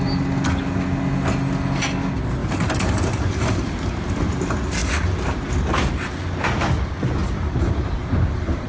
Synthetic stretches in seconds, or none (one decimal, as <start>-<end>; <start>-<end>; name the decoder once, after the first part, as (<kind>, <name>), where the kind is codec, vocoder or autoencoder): 2.4-4.2 (vocoder, BigVGAN v2); 4.8-5.4; 7.2-8.7